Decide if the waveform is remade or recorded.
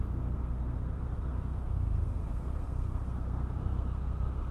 remade